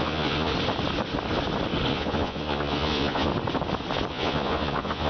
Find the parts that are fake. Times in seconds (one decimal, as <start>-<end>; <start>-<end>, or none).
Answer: 0.0-0.5; 1.9-3.3; 4.1-5.1